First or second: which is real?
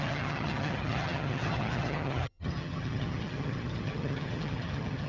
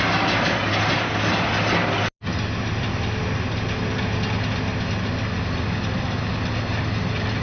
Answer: second